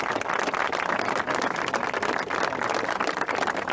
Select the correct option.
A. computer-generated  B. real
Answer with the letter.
B